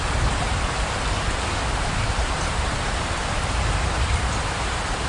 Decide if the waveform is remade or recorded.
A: remade